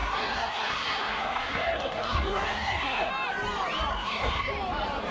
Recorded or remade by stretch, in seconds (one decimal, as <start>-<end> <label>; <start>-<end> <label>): 0.0-3.1 remade; 3.1-3.9 recorded; 3.9-4.5 remade; 4.5-5.1 recorded